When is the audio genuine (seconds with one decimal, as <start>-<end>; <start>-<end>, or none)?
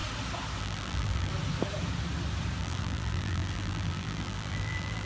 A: 0.0-0.6; 1.3-2.6